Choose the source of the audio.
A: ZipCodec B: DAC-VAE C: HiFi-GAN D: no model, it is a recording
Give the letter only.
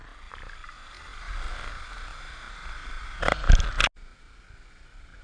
D